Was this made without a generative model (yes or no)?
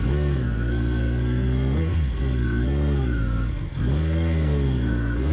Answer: no